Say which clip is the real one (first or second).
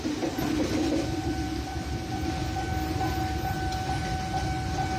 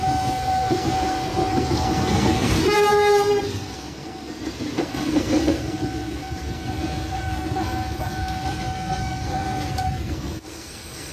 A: first